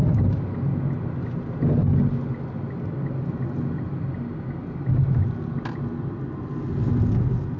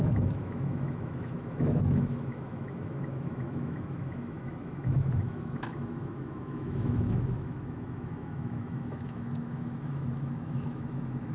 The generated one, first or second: second